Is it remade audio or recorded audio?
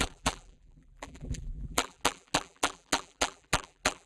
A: remade